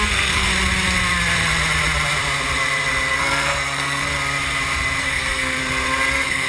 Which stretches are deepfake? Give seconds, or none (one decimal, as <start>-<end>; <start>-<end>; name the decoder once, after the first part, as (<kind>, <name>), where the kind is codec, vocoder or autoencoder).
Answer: 0.0-0.5 (codec, SNAC); 3.2-4.1; 5.0-5.6; 6.1-6.5

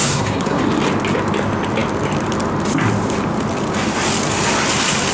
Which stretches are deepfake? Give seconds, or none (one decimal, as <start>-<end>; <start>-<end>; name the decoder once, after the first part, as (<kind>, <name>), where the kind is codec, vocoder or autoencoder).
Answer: 0.0-0.6 (codec, SNAC)

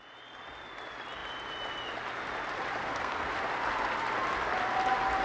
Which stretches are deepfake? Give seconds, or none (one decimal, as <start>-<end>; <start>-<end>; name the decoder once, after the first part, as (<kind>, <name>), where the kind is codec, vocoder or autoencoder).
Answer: 2.8-3.3 (codec, SNAC)

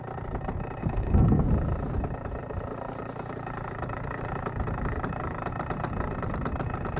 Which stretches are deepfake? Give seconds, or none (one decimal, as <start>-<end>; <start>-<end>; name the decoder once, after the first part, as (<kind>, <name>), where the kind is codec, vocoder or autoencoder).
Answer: 0.8-1.5 (codec, SNAC)